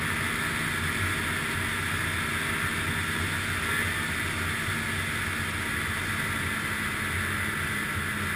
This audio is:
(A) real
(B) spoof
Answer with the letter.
A